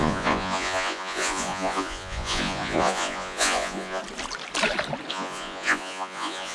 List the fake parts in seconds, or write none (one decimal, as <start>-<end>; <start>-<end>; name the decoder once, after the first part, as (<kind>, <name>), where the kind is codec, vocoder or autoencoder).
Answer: 0.0-4.0 (vocoder, Vocos); 5.1-6.5